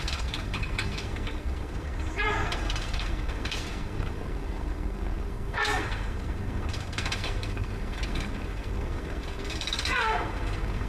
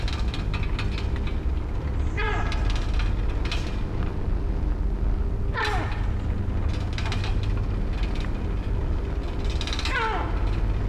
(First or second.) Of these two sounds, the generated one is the first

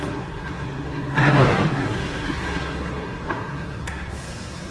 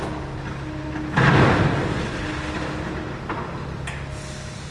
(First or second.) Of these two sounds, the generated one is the first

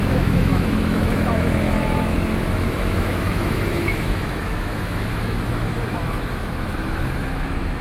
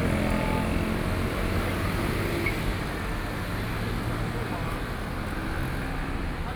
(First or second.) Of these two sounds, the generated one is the first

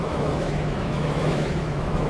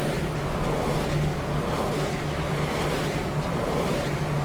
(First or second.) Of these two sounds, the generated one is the first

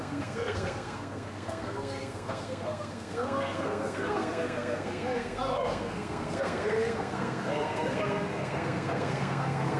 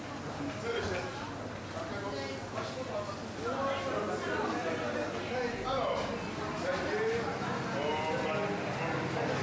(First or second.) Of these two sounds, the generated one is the first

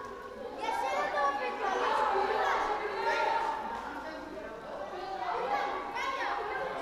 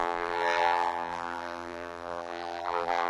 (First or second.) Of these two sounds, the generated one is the second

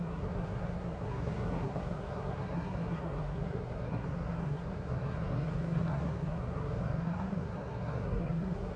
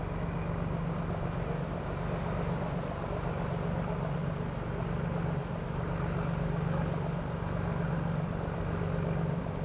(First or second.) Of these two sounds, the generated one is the first